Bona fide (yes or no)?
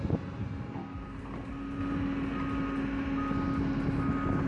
yes